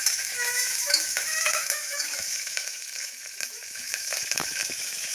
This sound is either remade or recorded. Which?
remade